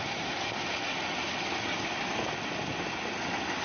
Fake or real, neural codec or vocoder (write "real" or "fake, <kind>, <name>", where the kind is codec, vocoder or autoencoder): real